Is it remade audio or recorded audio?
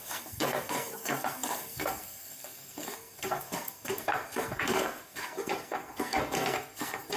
remade